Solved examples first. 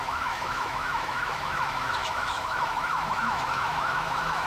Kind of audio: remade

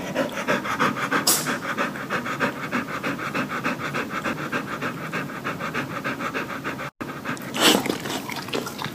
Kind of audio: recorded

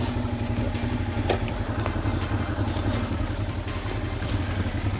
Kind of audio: recorded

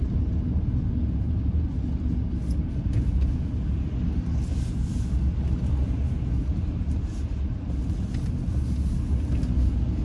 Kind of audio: recorded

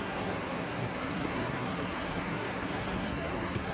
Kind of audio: remade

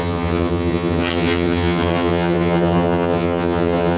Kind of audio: remade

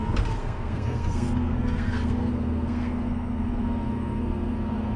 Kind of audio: remade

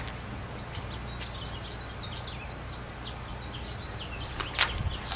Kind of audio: recorded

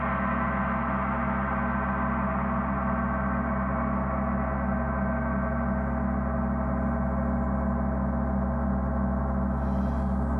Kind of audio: recorded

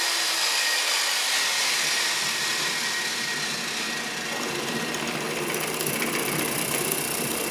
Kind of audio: remade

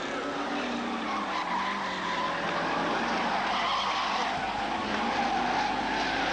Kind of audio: recorded